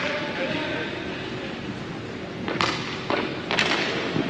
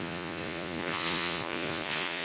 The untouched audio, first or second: first